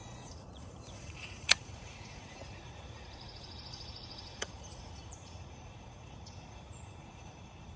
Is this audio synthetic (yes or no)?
yes